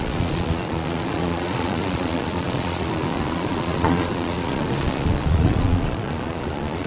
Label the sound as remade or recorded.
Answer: remade